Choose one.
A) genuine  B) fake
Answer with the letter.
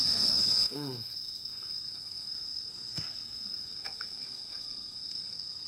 B